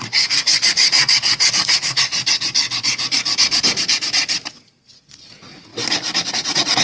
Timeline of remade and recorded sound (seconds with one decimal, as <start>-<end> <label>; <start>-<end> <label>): 0.0-2.1 remade; 2.1-4.8 recorded; 4.8-5.7 remade; 5.7-6.3 recorded; 6.3-6.8 remade